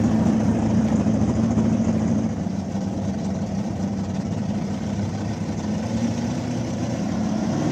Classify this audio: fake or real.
fake